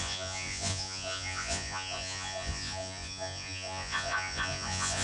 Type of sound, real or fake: fake